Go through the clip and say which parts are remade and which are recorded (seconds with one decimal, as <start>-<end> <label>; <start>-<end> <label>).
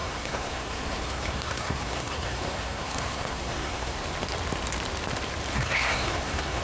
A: 0.0-4.0 remade; 4.0-5.5 recorded; 5.5-6.6 remade